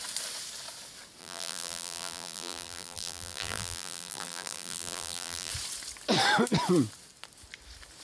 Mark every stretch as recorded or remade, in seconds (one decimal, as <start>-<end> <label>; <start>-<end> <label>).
0.0-1.2 recorded; 1.2-5.5 remade; 5.5-8.0 recorded